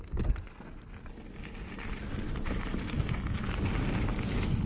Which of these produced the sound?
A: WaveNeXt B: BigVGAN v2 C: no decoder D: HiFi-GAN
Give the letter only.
C